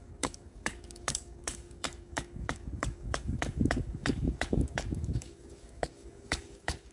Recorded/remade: remade